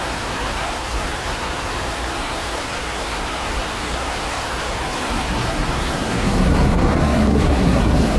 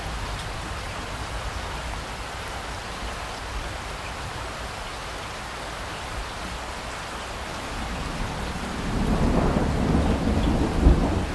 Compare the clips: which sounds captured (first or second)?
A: second